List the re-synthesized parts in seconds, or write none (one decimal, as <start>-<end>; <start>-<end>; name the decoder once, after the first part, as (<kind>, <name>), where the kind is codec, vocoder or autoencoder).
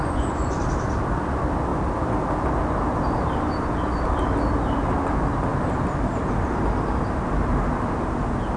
0.0-0.6 (vocoder, Vocos)